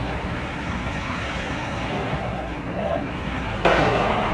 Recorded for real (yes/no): no